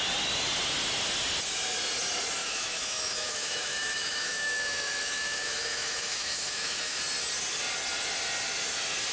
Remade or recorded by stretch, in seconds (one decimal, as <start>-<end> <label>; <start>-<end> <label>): 0.0-2.4 recorded; 2.4-7.0 remade; 7.0-9.1 recorded